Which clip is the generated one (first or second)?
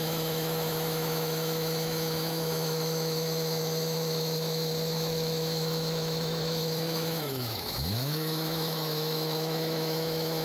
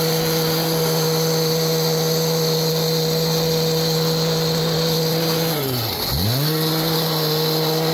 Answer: first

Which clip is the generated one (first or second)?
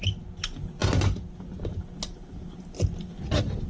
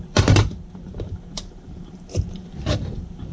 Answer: second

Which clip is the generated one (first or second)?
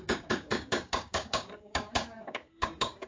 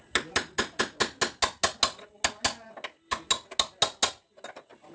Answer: first